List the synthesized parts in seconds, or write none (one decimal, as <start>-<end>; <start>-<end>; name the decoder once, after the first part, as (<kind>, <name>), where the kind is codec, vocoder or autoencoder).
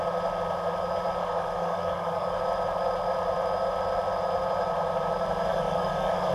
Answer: 1.2-2.4 (codec, DAC); 5.5-6.3